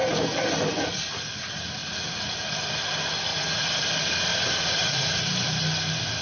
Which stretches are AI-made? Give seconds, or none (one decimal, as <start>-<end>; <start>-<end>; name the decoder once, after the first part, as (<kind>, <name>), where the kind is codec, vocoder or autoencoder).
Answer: 3.3-3.8 (vocoder, Vocos); 4.3-5.2